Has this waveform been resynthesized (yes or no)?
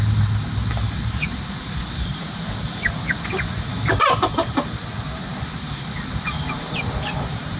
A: yes